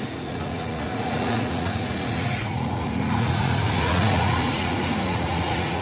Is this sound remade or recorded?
remade